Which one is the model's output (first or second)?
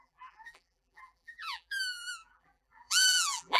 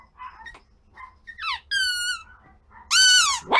first